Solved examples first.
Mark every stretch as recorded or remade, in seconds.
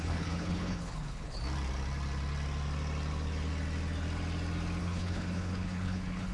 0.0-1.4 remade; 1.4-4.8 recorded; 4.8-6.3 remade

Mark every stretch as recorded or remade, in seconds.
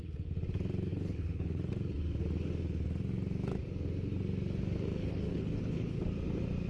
0.0-0.9 recorded; 0.9-1.7 remade; 1.7-5.0 recorded; 5.0-6.0 remade; 6.0-6.7 recorded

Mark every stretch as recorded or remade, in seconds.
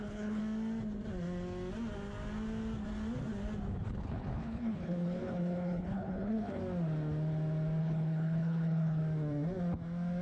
0.0-0.4 remade; 0.4-3.7 recorded; 3.7-6.6 remade; 6.6-7.8 recorded; 7.8-9.0 remade; 9.0-10.2 recorded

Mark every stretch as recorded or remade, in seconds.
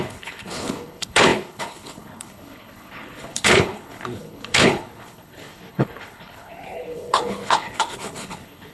0.0-8.7 remade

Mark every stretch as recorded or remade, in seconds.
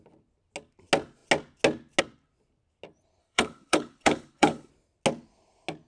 0.0-3.2 recorded; 3.2-4.7 remade; 4.7-5.9 recorded